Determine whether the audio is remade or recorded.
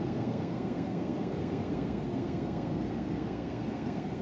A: remade